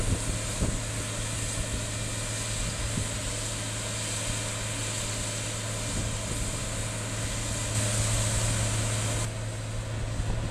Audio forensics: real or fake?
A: real